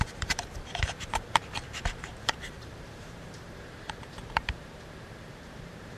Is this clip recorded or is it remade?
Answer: remade